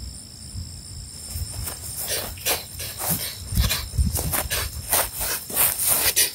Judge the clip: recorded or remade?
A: recorded